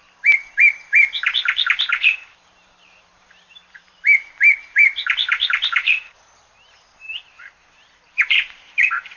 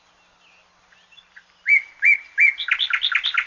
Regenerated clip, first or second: first